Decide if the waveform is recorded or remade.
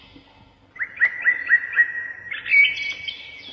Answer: recorded